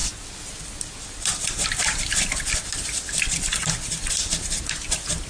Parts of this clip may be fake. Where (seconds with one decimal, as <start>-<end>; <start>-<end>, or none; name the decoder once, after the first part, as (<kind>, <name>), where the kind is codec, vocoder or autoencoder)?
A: none